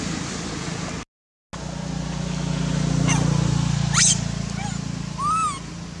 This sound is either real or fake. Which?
real